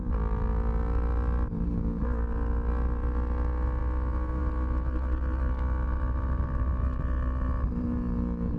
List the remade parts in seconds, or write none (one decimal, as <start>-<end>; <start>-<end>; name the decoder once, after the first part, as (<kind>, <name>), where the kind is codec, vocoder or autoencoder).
5.9-6.7 (autoencoder, DAC-VAE)